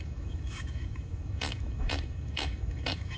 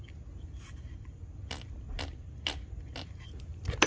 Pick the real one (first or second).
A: second